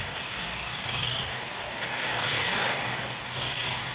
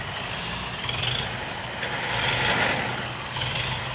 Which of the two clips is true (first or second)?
second